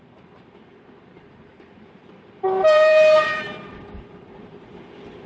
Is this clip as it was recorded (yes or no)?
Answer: no